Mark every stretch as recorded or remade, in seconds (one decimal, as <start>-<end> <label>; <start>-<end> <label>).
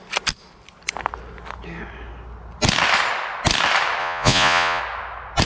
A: 0.0-4.0 recorded; 4.0-4.8 remade; 4.8-5.5 recorded